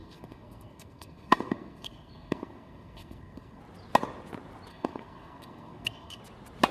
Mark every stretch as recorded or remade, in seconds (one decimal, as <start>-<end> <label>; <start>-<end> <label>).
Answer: 0.0-3.6 remade; 3.6-4.7 recorded; 4.7-6.2 remade; 6.2-6.7 recorded